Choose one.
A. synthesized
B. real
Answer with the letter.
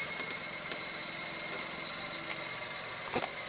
B